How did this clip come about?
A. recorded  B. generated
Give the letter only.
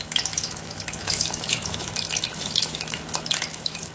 B